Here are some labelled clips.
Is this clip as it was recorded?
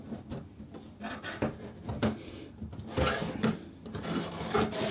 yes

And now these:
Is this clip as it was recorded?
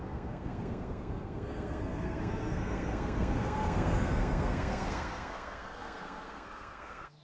no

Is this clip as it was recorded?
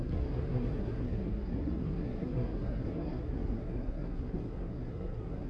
no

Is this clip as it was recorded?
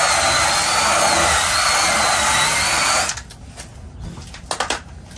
yes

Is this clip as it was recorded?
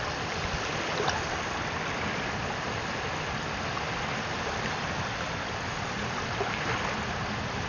yes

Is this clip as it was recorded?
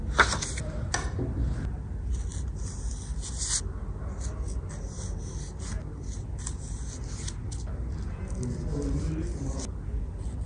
yes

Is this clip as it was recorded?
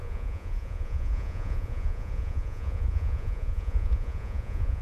no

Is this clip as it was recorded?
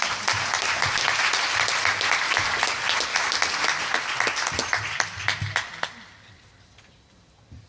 yes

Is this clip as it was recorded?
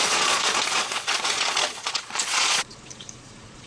no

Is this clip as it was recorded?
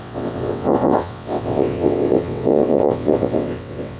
no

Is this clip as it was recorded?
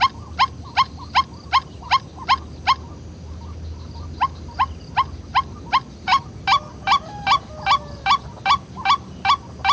yes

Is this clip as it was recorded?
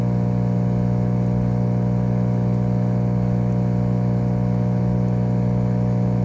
yes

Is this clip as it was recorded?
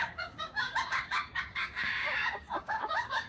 no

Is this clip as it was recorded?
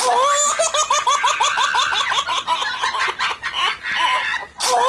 yes